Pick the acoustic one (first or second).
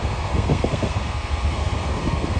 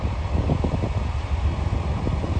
second